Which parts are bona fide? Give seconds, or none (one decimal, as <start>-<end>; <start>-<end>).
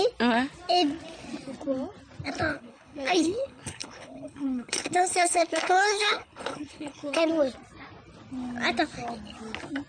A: 0.0-2.5; 7.3-9.9